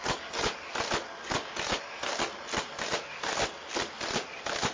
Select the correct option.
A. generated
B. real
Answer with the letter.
B